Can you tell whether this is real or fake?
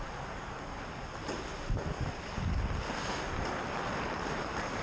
real